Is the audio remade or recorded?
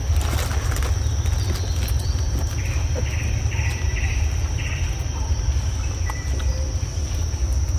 recorded